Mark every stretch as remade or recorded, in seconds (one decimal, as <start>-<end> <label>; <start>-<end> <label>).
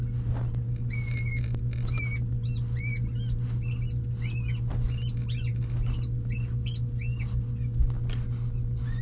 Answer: 0.0-9.0 recorded